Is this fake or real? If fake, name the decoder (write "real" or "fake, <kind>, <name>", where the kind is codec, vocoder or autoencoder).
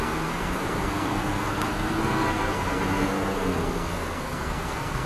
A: fake, codec, SNAC